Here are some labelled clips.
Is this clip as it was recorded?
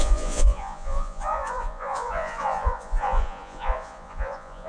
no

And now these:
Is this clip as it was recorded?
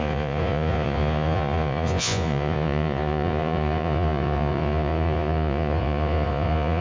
no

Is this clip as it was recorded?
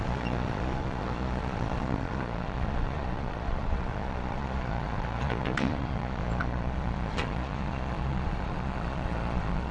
no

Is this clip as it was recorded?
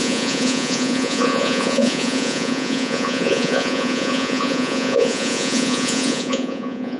no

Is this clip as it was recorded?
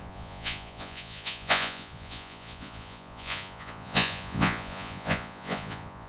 no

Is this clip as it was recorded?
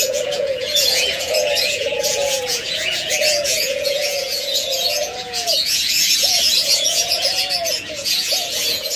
no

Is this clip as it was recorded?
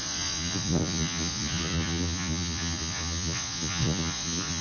no